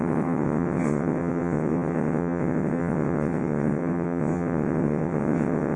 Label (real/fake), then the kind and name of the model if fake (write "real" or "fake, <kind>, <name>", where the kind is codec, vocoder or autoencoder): fake, vocoder, WaveNeXt